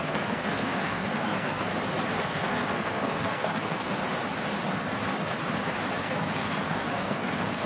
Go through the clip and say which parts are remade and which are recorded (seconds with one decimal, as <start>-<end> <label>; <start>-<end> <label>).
0.0-1.7 remade; 1.7-2.2 recorded; 2.2-4.0 remade; 4.0-6.0 recorded; 6.0-7.7 remade